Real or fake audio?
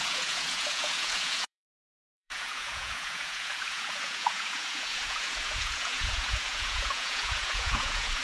fake